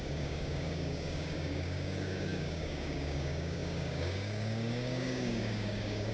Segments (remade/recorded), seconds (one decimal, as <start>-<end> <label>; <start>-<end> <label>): 0.0-6.1 remade